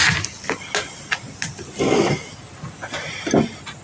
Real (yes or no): yes